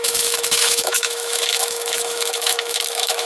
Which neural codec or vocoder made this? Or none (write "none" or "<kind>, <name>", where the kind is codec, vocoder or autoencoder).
autoencoder, DAC-VAE